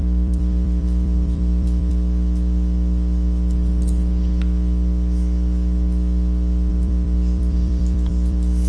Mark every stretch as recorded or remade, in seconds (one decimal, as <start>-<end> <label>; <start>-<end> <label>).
0.0-1.9 remade; 1.9-6.7 recorded; 6.7-8.7 remade